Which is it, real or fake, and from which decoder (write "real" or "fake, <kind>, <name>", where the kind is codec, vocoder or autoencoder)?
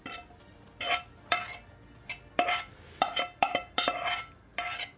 real